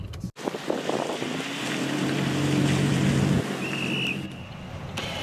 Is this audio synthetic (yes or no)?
no